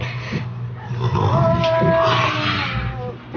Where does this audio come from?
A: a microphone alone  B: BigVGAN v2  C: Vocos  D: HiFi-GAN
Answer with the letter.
A